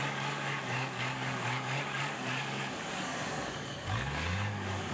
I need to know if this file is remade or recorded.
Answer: remade